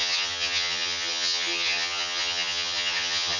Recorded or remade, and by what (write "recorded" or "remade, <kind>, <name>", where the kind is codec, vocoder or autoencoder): remade, vocoder, HiFi-GAN